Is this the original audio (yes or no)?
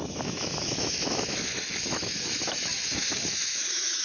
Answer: no